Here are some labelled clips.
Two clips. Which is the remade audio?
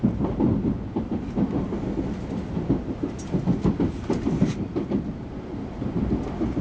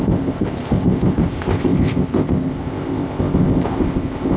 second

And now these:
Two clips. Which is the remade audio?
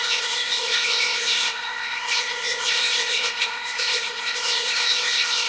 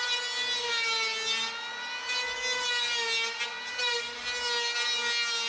first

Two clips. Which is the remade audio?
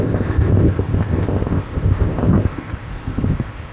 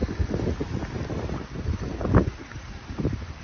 first